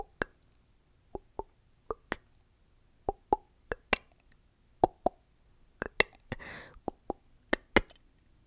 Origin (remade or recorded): recorded